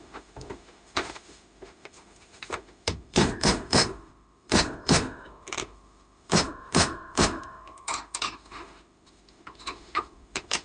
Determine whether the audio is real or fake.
fake